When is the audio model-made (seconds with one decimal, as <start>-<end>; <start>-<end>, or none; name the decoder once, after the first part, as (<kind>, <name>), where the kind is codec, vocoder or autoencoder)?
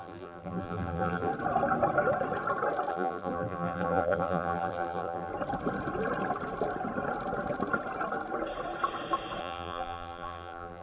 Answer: 0.0-1.3 (vocoder, BigVGAN v2); 2.9-5.3; 9.4-10.8